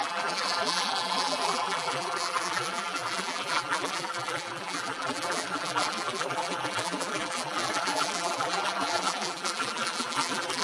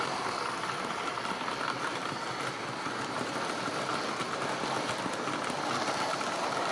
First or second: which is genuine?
second